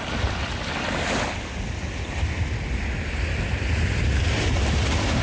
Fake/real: real